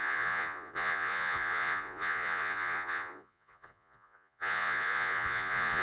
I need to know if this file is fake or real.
fake